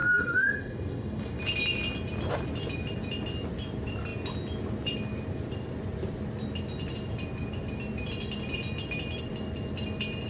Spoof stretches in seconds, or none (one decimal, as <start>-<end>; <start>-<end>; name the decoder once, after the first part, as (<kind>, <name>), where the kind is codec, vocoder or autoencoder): 0.0-1.4 (codec, SNAC)